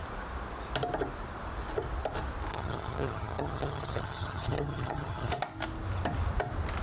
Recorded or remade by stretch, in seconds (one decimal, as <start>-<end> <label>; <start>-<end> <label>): 0.0-2.5 recorded; 2.5-5.3 remade; 5.3-6.8 recorded